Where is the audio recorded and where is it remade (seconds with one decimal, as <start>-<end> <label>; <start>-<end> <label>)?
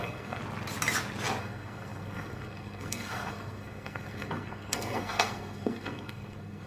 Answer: 0.0-0.4 remade; 0.4-1.4 recorded; 1.4-6.7 remade